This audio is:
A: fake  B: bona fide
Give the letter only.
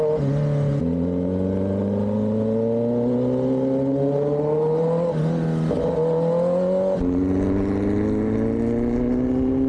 B